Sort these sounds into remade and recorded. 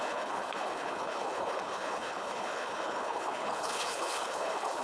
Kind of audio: remade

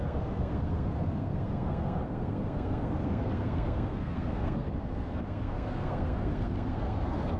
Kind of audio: remade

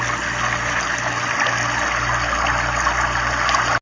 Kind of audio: recorded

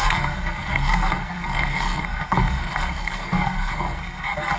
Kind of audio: remade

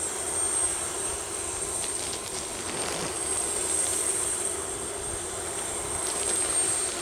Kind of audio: recorded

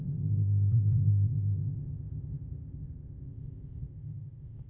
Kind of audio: remade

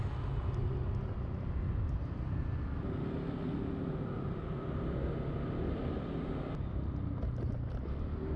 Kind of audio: recorded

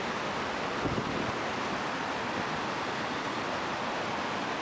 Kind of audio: recorded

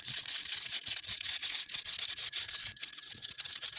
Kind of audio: remade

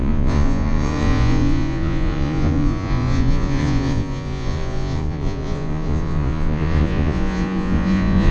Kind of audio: remade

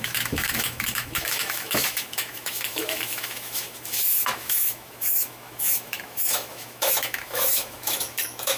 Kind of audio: remade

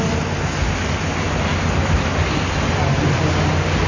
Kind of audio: recorded